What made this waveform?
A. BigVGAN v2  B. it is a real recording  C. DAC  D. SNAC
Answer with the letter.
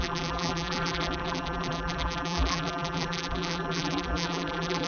A